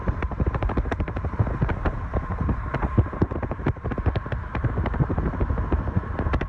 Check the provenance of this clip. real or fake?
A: fake